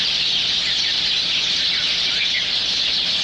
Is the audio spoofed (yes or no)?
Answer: no